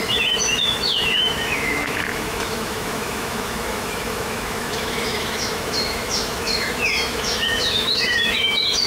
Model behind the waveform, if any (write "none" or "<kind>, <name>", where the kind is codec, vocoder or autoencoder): autoencoder, DAC-VAE